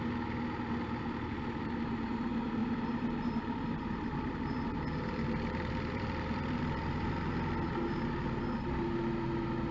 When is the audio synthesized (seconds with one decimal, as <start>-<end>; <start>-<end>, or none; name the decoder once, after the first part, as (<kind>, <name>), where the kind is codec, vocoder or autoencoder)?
2.6-7.1 (vocoder, BigVGAN v2)